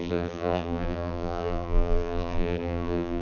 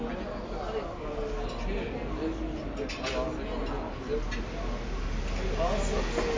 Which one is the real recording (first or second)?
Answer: second